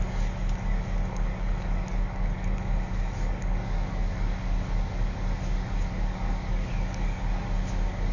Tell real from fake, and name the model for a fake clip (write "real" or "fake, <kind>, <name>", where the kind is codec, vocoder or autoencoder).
fake, codec, DAC